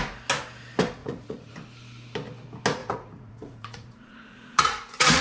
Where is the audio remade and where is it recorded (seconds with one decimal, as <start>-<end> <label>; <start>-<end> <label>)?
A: 0.0-1.0 recorded; 1.0-1.5 remade; 1.5-2.8 recorded; 2.8-5.2 remade